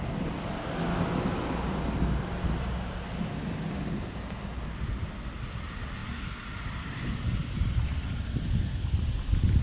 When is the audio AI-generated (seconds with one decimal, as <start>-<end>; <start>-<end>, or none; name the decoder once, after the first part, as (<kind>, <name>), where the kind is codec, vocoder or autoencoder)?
none